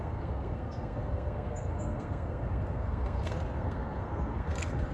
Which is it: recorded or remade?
remade